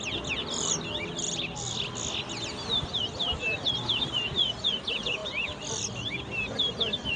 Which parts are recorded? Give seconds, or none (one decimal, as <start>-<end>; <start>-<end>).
0.0-7.2